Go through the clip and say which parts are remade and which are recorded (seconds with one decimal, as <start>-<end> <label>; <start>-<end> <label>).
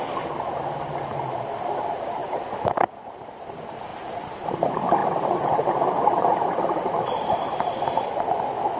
0.0-2.2 recorded; 2.2-2.9 remade; 2.9-3.9 recorded; 3.9-4.5 remade; 4.5-5.0 recorded; 5.0-8.3 remade; 8.3-8.8 recorded